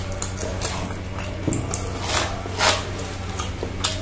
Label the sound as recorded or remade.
recorded